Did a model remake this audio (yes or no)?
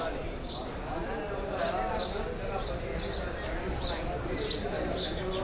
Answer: no